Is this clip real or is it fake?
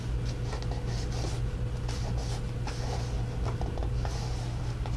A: real